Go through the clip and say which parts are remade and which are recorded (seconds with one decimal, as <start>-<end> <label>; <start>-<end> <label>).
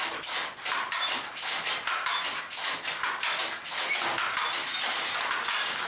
0.0-5.9 recorded